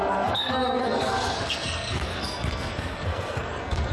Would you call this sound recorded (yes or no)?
no